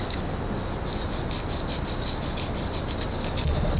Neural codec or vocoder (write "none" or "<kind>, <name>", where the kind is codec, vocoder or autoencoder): none